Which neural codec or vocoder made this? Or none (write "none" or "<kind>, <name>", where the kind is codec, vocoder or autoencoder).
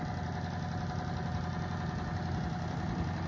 none